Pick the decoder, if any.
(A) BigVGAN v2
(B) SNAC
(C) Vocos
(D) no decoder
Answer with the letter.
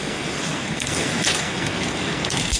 B